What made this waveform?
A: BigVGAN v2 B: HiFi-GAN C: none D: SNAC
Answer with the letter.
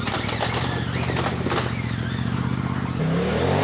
C